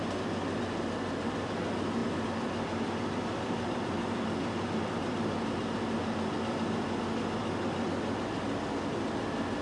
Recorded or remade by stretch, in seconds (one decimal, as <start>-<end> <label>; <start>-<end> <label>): 0.0-2.0 recorded; 2.0-6.4 remade; 6.4-9.6 recorded

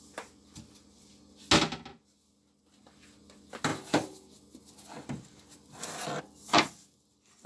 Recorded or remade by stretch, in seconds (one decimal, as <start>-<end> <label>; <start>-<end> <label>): 0.0-7.5 recorded